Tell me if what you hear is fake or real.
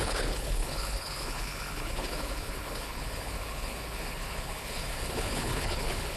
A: fake